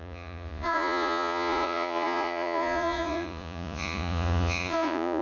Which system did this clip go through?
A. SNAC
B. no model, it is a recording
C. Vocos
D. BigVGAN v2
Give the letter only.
C